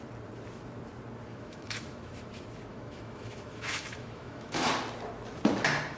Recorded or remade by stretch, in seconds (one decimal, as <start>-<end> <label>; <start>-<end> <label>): 0.0-1.3 recorded; 1.3-2.1 remade; 2.1-2.7 recorded; 2.7-4.7 remade; 4.7-6.0 recorded